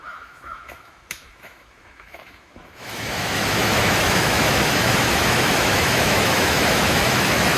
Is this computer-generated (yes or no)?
yes